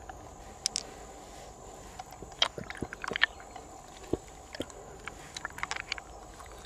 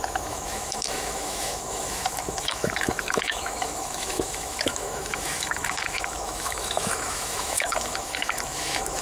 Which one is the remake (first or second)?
second